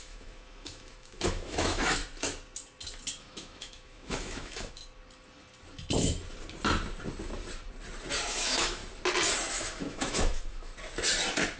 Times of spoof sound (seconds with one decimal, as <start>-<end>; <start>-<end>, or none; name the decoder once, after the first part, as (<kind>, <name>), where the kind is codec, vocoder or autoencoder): 0.0-2.0 (autoencoder, DAC-VAE); 3.2-4.8; 8.3-8.8; 9.5-10.7